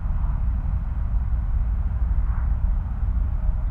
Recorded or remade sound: recorded